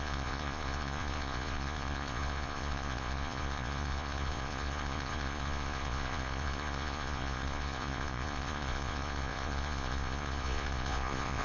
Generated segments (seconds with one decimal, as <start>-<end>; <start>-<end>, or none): 0.0-11.4